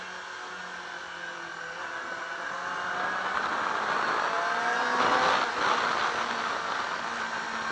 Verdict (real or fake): real